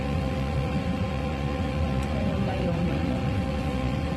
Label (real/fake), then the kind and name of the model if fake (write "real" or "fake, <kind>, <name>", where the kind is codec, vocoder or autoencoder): fake, vocoder, Vocos